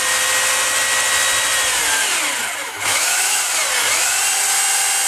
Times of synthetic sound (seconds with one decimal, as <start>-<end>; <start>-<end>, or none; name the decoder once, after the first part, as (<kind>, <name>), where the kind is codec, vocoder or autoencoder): 2.6-3.4 (autoencoder, DAC-VAE)